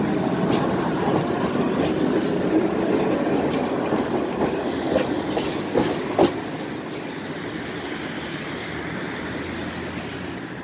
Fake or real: real